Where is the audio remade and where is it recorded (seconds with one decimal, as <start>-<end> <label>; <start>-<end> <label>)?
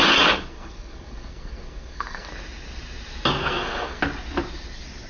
0.0-0.5 recorded; 0.5-2.3 remade; 2.3-3.4 recorded; 3.4-4.0 remade; 4.0-5.1 recorded